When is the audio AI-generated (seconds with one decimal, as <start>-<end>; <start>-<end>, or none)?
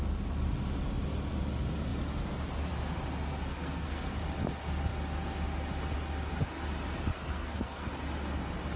3.5-4.2; 7.1-7.9